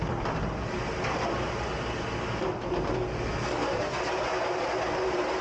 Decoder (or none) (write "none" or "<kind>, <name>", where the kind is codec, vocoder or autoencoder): none